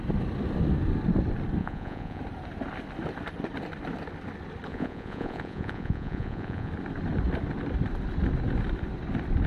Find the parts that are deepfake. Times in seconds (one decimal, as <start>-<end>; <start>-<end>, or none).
1.6-2.2; 4.7-6.7